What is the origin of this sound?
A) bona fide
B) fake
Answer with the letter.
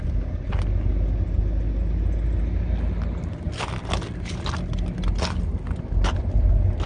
A